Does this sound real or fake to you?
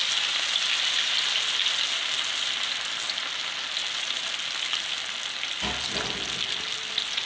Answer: real